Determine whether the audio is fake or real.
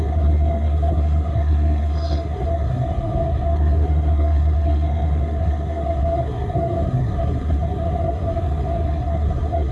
fake